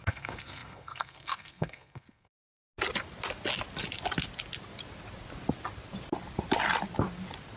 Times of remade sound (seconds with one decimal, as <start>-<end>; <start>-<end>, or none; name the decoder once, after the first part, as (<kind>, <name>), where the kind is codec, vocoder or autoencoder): 0.0-2.6 (codec, SNAC)